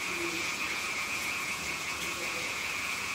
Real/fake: fake